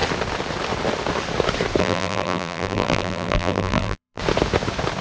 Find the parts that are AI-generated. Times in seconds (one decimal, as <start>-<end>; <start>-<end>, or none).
1.8-4.2